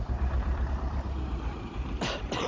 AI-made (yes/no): yes